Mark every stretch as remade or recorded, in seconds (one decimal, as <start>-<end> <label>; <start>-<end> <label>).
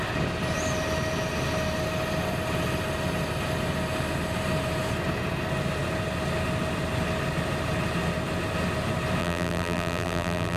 0.0-9.2 recorded; 9.2-10.6 remade